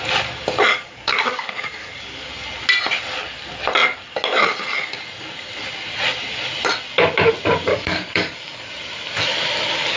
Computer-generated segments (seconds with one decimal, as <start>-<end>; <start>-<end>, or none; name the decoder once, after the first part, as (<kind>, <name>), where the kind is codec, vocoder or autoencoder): 0.7-2.3 (codec, DAC); 7.7-8.7